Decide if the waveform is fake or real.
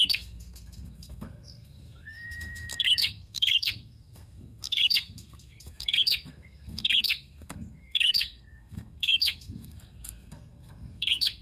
fake